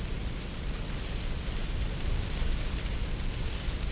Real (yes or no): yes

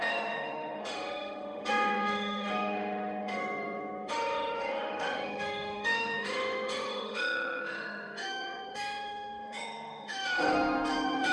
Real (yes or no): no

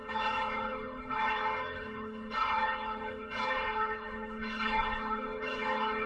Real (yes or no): no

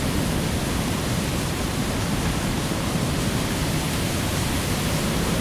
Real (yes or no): no